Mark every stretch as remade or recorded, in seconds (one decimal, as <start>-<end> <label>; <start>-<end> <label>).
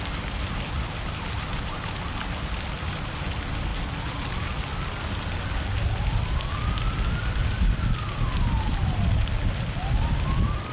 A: 0.0-10.7 recorded